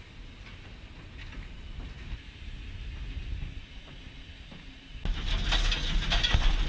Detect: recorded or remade recorded